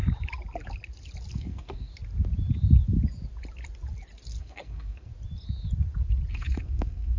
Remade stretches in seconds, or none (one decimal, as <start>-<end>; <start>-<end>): 1.3-1.9; 4.4-5.1; 6.3-7.2